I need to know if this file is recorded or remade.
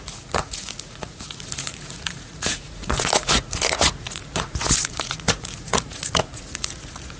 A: remade